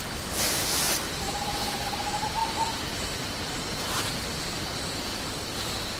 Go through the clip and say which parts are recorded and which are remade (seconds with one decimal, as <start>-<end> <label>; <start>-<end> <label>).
0.0-6.0 recorded